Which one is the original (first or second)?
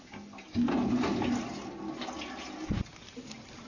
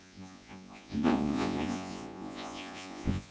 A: first